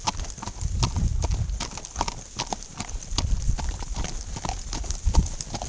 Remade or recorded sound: recorded